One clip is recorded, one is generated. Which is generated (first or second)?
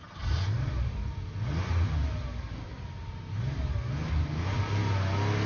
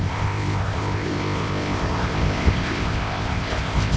second